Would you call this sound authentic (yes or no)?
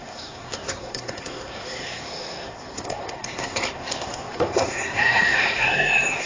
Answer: no